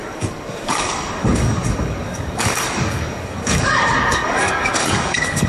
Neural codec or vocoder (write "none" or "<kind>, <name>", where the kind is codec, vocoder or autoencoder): codec, DAC